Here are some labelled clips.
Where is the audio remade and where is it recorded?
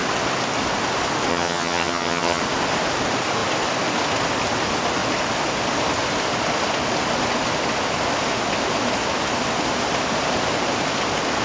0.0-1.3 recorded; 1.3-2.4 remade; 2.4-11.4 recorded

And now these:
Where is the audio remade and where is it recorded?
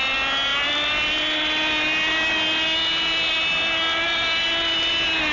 0.0-5.3 recorded